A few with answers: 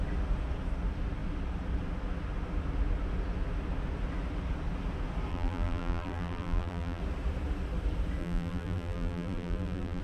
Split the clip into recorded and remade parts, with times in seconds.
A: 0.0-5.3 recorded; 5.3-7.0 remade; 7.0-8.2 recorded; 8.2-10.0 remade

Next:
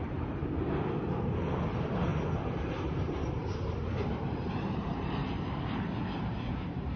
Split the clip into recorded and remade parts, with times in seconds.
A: 0.0-0.4 remade; 0.4-1.0 recorded; 1.0-2.1 remade; 2.1-2.7 recorded; 2.7-3.4 remade; 3.4-4.6 recorded; 4.6-5.2 remade; 5.2-6.1 recorded; 6.1-7.0 remade

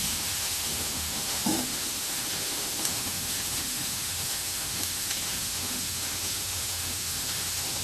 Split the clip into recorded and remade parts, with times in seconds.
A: 0.0-7.8 remade

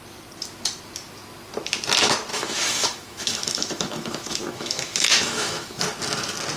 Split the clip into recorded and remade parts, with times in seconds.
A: 0.0-2.3 recorded; 2.3-5.8 remade; 5.8-6.6 recorded